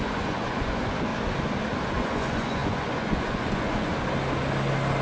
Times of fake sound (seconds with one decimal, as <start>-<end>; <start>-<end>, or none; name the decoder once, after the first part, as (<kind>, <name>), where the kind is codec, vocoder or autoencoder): 0.0-1.1 (vocoder, Vocos); 1.9-3.9